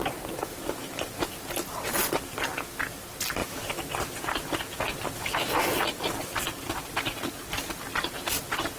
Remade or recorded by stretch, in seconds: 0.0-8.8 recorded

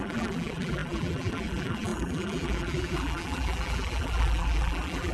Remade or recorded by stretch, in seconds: 0.0-5.1 remade

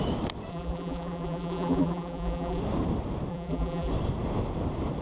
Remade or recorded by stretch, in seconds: 0.0-0.5 recorded; 0.5-2.6 remade; 2.6-3.3 recorded; 3.3-3.9 remade; 3.9-5.0 recorded

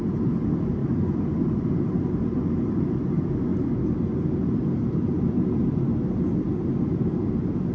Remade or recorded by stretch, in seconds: 0.0-3.5 recorded; 3.5-4.0 remade; 4.0-7.7 recorded

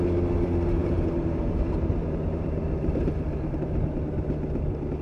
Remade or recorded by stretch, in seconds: 0.0-0.8 recorded; 0.8-3.8 remade; 3.8-5.0 recorded

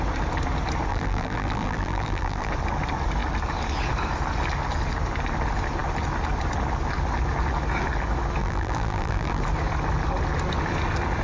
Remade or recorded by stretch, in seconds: 0.0-0.9 recorded; 0.9-2.5 remade; 2.5-8.4 recorded; 8.4-9.4 remade; 9.4-11.2 recorded

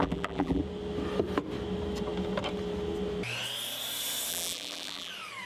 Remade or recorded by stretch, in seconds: 0.0-0.6 remade; 0.6-4.3 recorded; 4.3-5.1 remade; 5.1-5.5 recorded

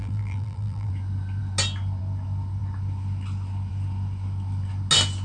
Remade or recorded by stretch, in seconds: 0.0-0.9 remade; 0.9-5.2 recorded